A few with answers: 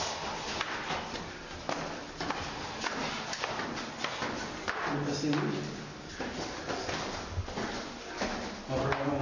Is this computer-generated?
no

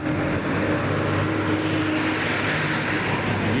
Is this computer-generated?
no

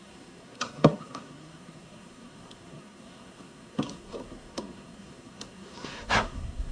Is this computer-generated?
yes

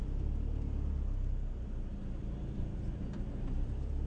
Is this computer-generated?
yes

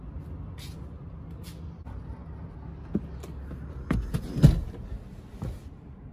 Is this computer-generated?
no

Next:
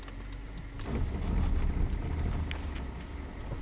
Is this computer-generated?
no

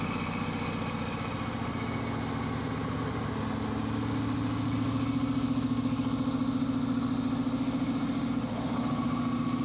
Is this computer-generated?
no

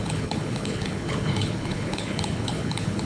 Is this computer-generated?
yes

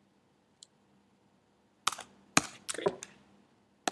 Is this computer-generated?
no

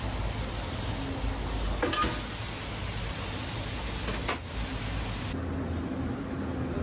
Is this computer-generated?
no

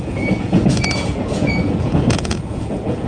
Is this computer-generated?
yes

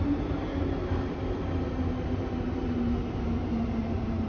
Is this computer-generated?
no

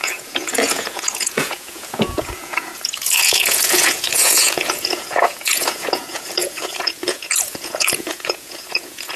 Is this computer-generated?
yes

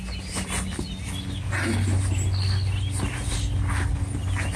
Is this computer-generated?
no